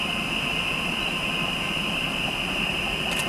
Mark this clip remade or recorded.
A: recorded